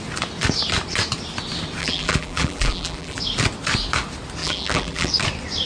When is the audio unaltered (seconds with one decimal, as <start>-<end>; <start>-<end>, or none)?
0.0-1.8; 3.2-4.4; 5.1-5.7